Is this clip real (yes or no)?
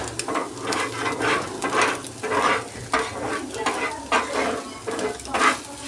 yes